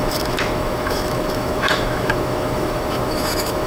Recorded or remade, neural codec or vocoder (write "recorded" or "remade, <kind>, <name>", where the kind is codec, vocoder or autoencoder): remade, autoencoder, DAC-VAE